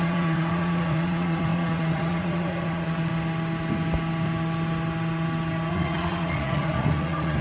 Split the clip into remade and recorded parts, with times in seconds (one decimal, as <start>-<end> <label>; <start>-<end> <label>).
0.0-3.1 remade; 3.1-5.7 recorded; 5.7-7.4 remade